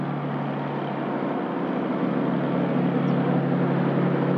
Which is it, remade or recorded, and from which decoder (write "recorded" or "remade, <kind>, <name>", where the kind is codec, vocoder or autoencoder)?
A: recorded